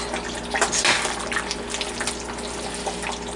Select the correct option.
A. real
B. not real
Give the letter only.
A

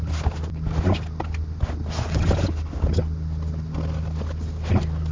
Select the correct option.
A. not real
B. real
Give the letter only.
B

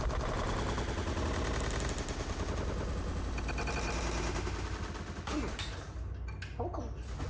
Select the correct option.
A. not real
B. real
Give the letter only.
B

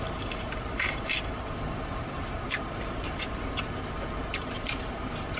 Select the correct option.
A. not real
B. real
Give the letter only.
A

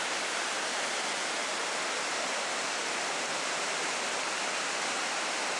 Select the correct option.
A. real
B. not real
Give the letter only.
A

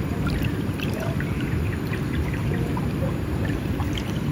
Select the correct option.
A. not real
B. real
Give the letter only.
A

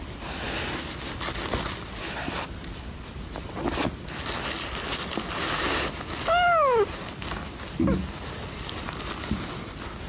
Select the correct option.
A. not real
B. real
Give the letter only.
B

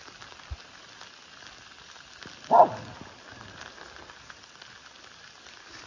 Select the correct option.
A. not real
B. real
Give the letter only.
A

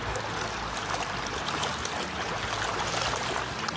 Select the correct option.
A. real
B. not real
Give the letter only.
A